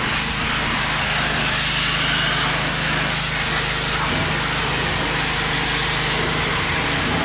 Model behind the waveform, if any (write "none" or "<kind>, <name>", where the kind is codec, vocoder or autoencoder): none